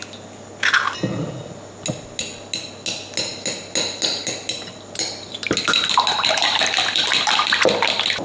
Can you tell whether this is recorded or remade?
recorded